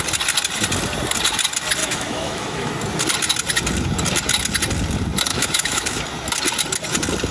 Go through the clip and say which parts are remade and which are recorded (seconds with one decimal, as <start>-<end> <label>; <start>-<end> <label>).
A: 0.0-1.8 recorded; 1.8-2.7 remade; 2.7-5.3 recorded; 5.3-6.0 remade; 6.0-7.3 recorded